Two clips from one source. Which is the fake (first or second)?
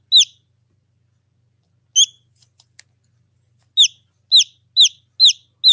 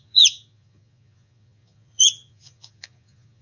second